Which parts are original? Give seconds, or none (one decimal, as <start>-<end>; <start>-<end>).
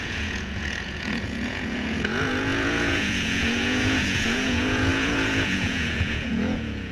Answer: none